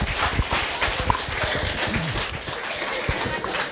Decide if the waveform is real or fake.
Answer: real